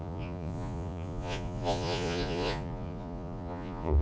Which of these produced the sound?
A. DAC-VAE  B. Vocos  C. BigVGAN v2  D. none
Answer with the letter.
B